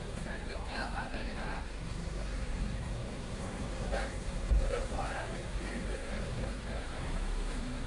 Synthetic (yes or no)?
yes